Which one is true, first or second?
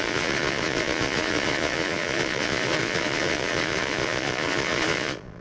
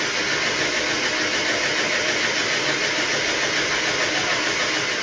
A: second